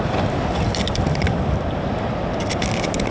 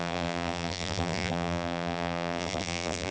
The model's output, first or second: second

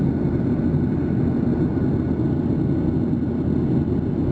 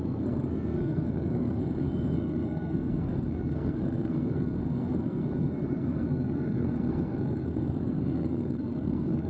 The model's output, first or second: second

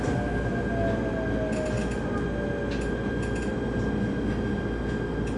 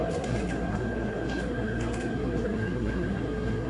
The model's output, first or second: second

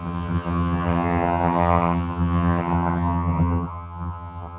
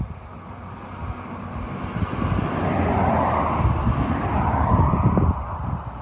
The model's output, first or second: first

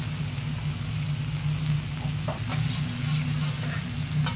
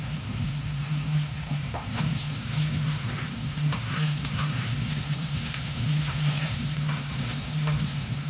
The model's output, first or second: second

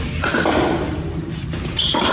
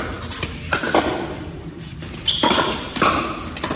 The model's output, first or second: second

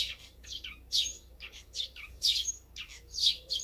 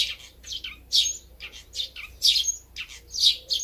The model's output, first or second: first